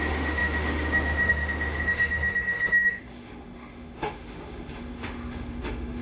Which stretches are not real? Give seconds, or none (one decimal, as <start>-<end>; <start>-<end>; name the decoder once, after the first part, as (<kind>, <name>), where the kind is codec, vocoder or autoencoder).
0.0-6.0 (autoencoder, DAC-VAE)

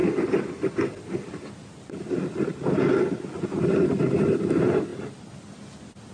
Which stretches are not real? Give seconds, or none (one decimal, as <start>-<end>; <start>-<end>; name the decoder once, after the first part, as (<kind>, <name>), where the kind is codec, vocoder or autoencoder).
none

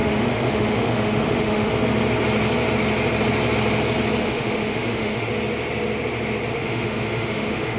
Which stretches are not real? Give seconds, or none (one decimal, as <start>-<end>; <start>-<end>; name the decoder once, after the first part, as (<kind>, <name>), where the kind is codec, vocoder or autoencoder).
0.0-1.7 (autoencoder, DAC-VAE); 4.2-5.3; 6.5-7.8

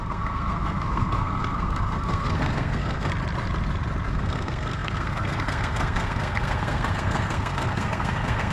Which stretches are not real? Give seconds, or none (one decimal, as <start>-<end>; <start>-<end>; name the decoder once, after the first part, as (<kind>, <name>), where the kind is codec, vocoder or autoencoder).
0.0-3.1 (codec, SNAC); 4.1-8.5

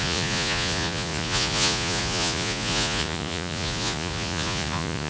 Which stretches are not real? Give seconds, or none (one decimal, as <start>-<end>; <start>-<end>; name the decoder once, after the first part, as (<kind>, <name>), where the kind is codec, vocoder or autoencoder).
0.0-5.1 (vocoder, Vocos)